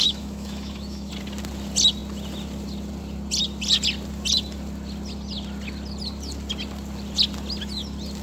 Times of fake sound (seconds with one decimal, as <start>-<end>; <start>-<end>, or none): 0.0-1.1

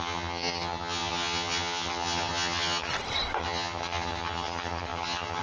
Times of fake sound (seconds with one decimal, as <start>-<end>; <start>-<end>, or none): 0.0-2.9; 3.4-5.4

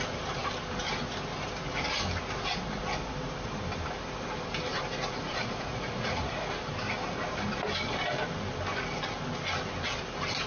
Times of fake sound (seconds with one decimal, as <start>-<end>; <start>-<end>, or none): 4.7-6.5

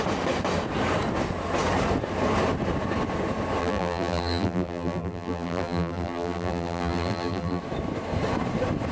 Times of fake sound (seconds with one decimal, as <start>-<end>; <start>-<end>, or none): 3.6-7.6